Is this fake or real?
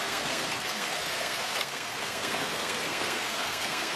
fake